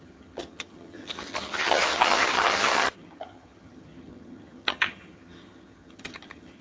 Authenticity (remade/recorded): remade